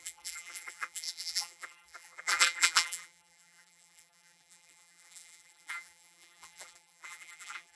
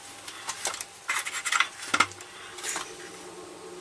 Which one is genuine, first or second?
second